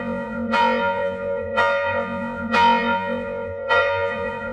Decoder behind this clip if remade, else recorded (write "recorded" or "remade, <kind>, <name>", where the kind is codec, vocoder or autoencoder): remade, vocoder, Vocos